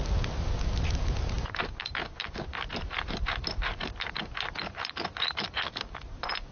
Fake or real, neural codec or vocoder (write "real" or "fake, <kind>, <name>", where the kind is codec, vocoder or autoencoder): real